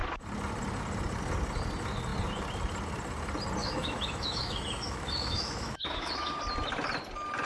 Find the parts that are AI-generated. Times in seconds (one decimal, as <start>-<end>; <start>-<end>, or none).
3.6-6.4